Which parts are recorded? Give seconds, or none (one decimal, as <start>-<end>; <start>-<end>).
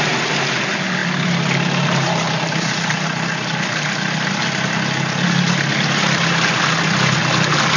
0.0-1.0; 4.3-7.8